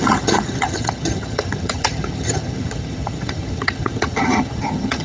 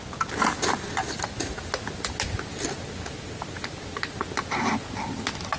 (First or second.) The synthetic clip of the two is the first